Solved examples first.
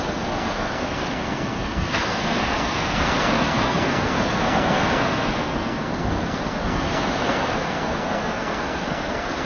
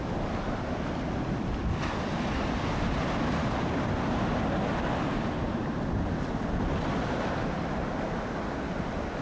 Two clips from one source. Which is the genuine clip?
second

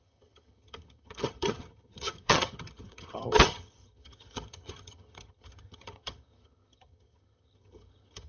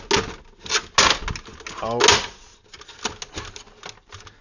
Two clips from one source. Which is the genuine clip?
second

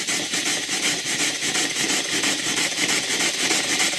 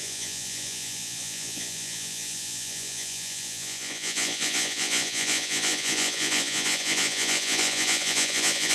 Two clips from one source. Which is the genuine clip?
first